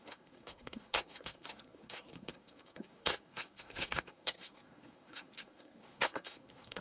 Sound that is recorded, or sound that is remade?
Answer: remade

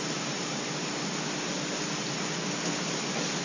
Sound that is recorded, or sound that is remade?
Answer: recorded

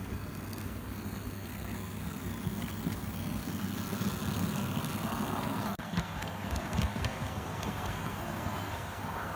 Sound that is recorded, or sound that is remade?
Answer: remade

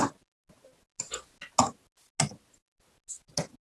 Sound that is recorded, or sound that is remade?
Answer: recorded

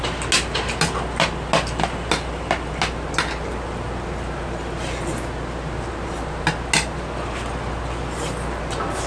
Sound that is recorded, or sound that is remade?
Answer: recorded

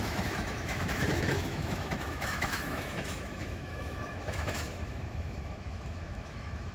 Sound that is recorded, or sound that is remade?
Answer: remade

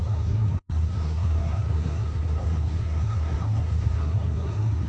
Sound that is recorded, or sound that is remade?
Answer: remade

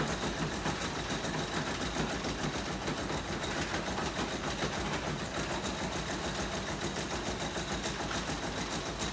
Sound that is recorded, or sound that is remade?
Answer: recorded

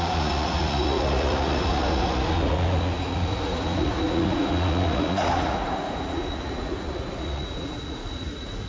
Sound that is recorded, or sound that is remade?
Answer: remade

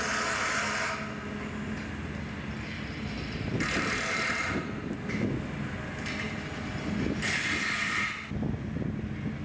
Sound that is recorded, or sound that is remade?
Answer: recorded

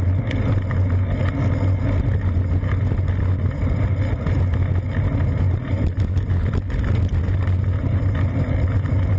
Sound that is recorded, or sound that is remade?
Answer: recorded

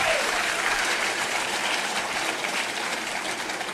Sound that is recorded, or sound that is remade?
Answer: remade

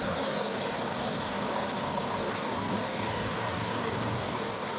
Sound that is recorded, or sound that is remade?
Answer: remade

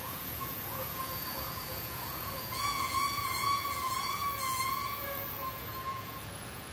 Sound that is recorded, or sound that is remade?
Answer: remade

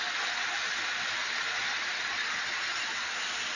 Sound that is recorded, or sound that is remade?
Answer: recorded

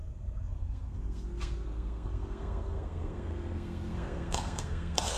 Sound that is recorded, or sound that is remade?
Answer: remade